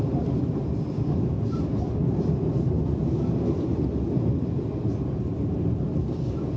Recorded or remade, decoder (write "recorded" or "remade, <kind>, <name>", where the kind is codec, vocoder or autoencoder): recorded